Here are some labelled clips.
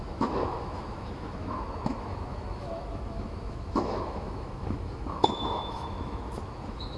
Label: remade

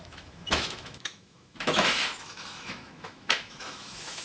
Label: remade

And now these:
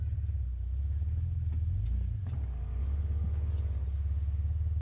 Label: recorded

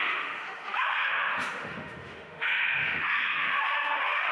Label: remade